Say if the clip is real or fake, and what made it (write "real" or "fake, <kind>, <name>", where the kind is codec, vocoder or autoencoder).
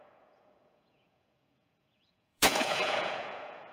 fake, vocoder, Vocos